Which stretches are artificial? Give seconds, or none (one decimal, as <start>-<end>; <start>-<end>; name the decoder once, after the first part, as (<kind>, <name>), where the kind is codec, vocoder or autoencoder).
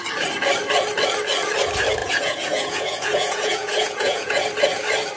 2.0-4.5 (vocoder, Vocos)